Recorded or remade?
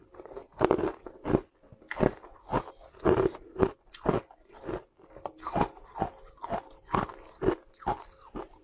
recorded